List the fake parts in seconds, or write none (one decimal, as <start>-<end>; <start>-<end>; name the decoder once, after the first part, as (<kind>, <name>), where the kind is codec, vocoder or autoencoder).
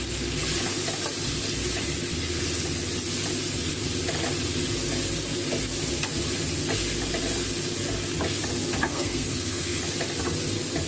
8.9-9.8 (codec, SNAC)